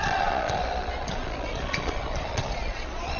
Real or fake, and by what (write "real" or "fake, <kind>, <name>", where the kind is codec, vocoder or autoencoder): fake, vocoder, Vocos